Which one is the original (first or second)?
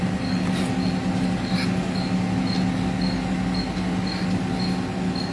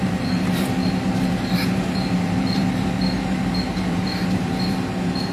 first